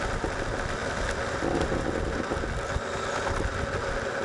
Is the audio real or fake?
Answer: real